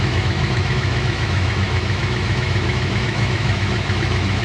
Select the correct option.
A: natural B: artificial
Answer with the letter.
B